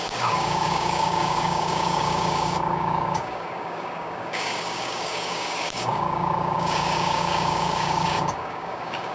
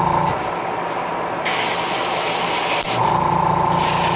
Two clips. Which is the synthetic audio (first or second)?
first